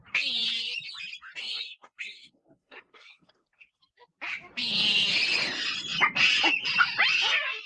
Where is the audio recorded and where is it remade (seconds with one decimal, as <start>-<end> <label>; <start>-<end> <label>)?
0.0-1.4 recorded; 1.4-3.8 remade; 3.8-7.7 recorded